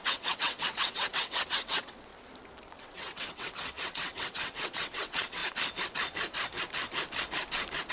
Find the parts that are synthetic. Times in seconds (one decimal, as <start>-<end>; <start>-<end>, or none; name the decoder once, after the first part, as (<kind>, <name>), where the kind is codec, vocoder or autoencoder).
0.0-2.1 (vocoder, WaveNeXt); 2.8-5.4